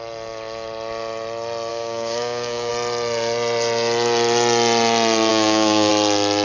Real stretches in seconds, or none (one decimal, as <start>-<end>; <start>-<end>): 0.0-1.7; 2.7-5.3; 5.9-6.4